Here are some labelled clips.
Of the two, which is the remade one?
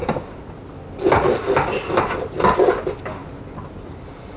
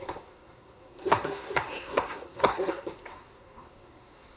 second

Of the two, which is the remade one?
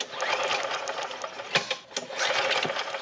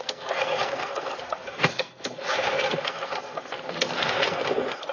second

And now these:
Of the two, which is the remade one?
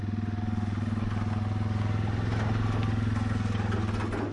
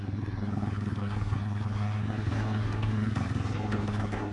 second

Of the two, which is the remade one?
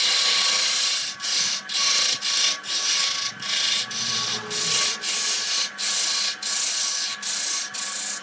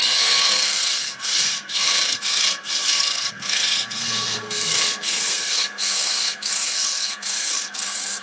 second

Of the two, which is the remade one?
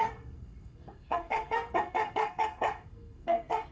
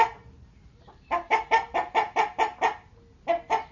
first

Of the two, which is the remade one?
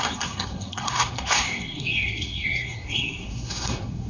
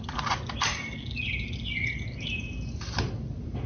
first